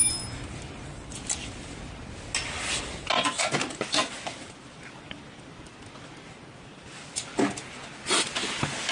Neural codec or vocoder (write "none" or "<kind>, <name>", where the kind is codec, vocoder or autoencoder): none